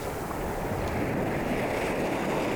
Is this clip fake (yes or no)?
no